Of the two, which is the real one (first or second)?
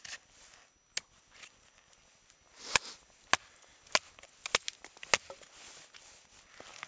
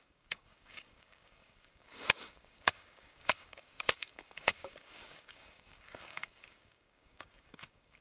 first